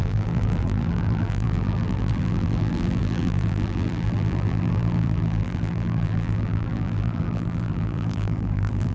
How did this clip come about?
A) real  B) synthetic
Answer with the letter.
B